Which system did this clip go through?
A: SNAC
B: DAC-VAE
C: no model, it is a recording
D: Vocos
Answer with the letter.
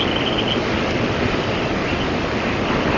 C